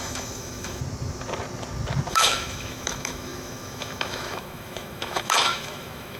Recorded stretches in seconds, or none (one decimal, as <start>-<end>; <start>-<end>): 0.8-2.1